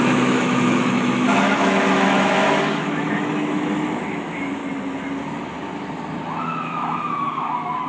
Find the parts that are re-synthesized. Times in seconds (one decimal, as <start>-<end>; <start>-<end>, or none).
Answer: 0.0-4.6; 6.4-7.9